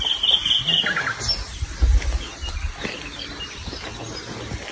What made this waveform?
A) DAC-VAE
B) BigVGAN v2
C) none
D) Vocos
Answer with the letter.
C